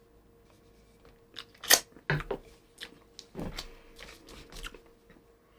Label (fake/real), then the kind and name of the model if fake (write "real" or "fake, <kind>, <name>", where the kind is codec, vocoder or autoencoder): real